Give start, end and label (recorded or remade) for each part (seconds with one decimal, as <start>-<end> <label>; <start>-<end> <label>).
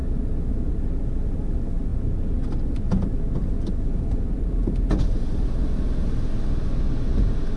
0.0-7.6 recorded